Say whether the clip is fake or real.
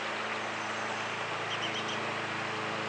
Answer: real